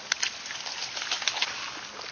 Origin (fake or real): real